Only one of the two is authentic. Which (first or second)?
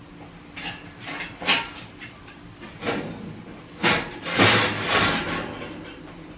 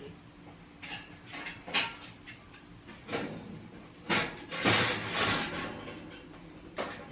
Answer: first